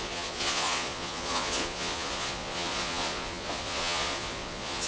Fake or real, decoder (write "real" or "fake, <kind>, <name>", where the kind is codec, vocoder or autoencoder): fake, vocoder, Vocos